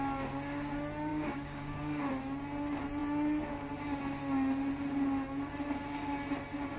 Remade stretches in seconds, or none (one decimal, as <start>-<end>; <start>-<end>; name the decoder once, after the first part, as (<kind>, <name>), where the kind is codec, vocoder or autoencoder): 1.1-2.1 (codec, DAC)